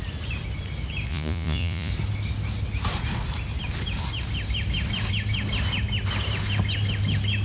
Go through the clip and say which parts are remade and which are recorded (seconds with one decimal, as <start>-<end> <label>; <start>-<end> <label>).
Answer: 0.0-1.1 recorded; 1.1-1.9 remade; 1.9-7.4 recorded